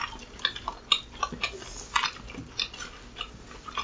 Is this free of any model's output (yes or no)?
yes